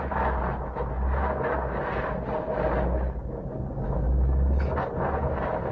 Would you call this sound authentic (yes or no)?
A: yes